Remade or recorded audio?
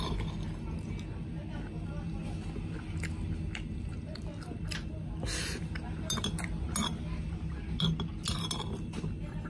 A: recorded